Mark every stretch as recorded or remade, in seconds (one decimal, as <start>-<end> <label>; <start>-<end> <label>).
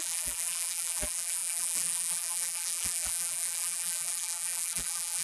0.0-5.2 remade